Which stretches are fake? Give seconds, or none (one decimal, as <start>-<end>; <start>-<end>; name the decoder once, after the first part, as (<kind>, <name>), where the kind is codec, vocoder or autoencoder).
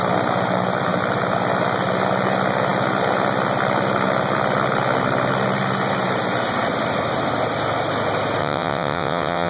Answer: 8.4-9.5 (vocoder, WaveNeXt)